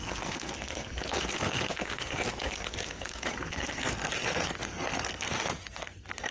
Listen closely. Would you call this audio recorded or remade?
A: remade